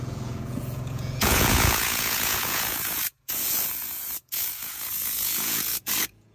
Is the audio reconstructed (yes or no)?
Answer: yes